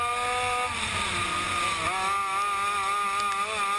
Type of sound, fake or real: real